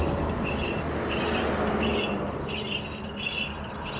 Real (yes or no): yes